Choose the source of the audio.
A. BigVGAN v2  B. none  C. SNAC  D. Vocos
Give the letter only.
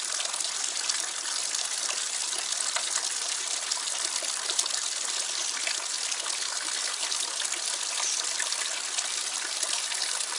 A